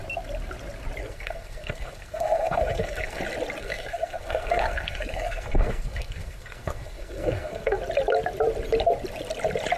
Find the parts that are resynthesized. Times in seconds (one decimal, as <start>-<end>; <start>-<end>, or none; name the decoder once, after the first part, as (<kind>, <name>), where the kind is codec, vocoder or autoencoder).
1.0-3.2 (codec, SNAC); 3.6-7.8